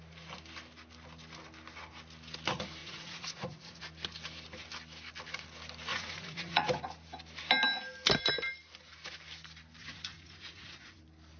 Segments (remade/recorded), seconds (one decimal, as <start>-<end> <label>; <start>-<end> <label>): 0.0-2.8 recorded; 2.8-3.8 remade; 3.8-5.9 recorded; 5.9-6.7 remade; 6.7-9.8 recorded; 9.8-11.0 remade; 11.0-11.4 recorded